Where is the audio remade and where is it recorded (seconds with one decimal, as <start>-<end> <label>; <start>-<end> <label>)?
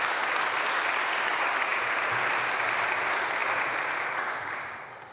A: 0.0-5.1 recorded